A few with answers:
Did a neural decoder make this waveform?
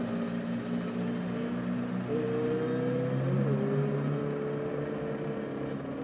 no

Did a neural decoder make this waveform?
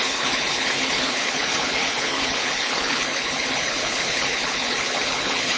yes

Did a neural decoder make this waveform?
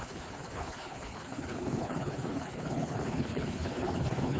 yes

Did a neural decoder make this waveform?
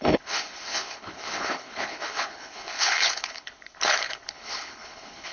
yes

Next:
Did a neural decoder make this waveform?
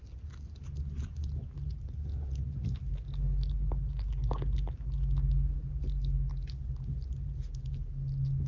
no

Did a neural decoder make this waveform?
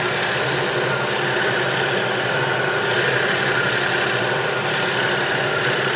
no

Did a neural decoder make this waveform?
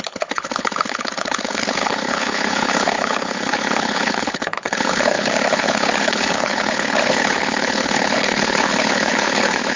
yes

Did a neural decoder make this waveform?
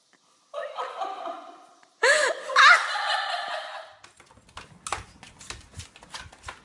no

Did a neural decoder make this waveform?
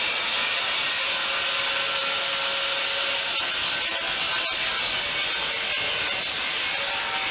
no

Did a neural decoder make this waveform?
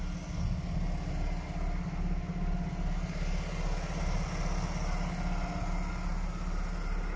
no